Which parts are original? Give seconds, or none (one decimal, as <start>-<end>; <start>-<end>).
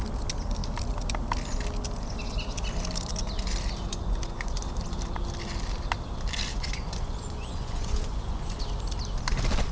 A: 0.0-3.9; 4.6-6.5; 8.6-9.7